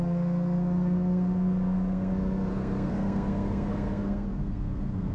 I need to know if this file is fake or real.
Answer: fake